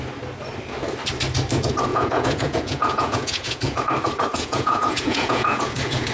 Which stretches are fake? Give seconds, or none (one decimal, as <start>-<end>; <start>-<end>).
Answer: 1.9-3.8; 4.3-6.1